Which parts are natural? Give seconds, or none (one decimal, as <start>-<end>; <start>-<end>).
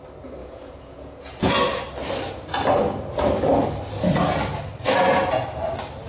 0.0-0.4; 1.5-6.1